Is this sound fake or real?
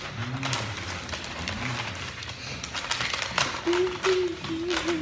real